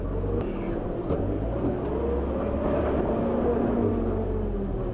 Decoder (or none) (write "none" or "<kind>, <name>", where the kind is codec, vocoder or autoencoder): none